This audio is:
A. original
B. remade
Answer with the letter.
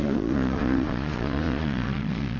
B